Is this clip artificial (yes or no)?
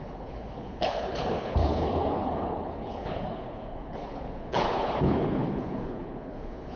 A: yes